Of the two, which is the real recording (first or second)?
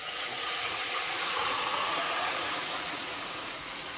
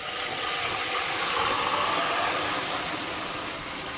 second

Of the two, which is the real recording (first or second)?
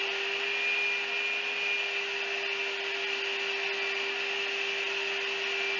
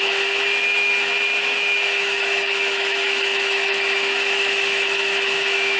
first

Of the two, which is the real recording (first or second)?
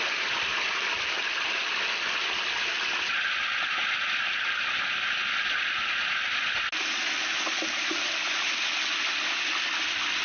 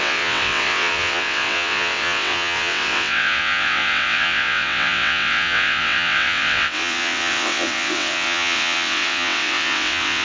first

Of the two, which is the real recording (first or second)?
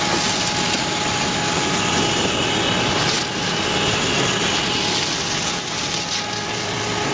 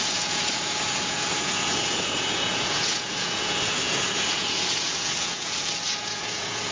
first